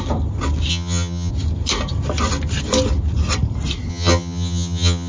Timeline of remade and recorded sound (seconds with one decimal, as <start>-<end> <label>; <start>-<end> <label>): 0.0-0.7 recorded; 0.7-1.3 remade; 1.3-3.9 recorded; 3.9-5.1 remade